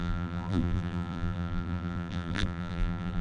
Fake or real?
fake